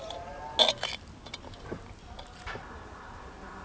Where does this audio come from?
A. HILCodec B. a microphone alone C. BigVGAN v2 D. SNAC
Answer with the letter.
B